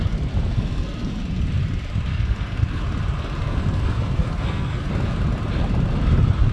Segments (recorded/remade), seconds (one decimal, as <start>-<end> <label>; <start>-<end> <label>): 0.0-0.5 recorded; 0.5-1.2 remade; 1.2-2.1 recorded; 2.1-2.8 remade; 2.8-3.4 recorded; 3.4-4.9 remade; 4.9-6.5 recorded